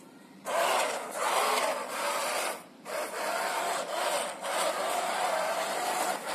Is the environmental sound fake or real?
fake